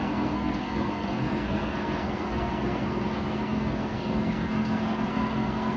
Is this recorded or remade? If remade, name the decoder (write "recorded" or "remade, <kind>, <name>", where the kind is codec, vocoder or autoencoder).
remade, codec, SNAC